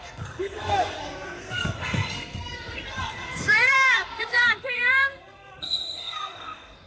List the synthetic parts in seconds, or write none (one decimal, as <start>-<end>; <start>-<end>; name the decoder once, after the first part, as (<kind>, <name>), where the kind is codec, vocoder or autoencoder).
0.0-6.9 (codec, SNAC)